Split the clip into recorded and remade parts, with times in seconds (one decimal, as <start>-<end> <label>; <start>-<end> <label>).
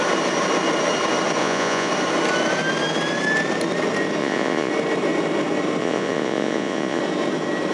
0.0-1.4 recorded; 1.4-1.9 remade; 1.9-4.2 recorded; 4.2-4.7 remade; 4.7-5.8 recorded; 5.8-7.0 remade; 7.0-7.7 recorded